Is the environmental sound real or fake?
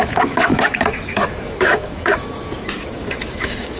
fake